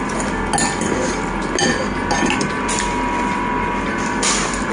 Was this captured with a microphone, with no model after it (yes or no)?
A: yes